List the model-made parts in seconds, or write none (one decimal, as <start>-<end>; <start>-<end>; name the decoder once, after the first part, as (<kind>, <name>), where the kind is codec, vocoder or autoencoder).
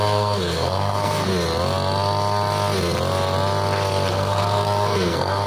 0.0-1.3 (codec, SNAC); 4.1-5.5